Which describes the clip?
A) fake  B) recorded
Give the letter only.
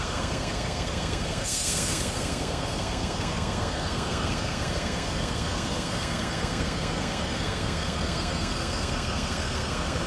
A